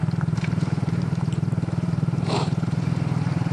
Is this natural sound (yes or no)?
no